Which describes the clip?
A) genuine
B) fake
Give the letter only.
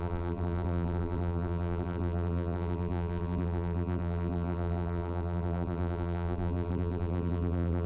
B